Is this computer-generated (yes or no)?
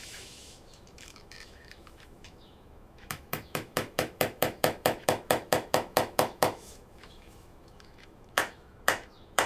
yes